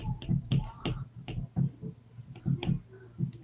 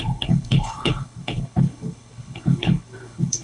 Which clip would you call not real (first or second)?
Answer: second